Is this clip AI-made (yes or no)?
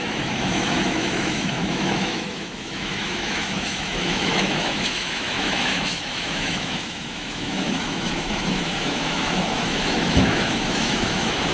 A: yes